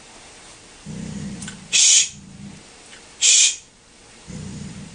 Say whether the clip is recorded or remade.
recorded